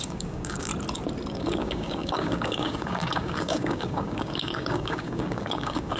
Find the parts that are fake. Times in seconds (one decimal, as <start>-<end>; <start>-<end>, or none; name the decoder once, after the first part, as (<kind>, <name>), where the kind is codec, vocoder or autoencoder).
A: 0.0-0.7 (codec, DAC); 1.3-6.0